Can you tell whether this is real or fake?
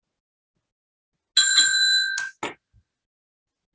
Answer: real